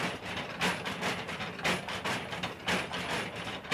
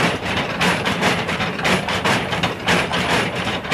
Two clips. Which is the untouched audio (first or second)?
first